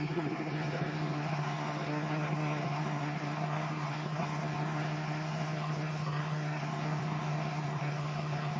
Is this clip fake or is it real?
fake